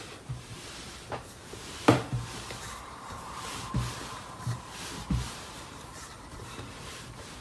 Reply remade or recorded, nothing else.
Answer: remade